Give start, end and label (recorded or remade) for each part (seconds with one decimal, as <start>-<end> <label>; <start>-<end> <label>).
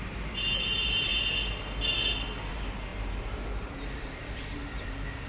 0.0-1.1 remade; 1.1-2.5 recorded; 2.5-5.3 remade